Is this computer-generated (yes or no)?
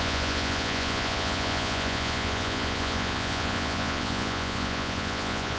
yes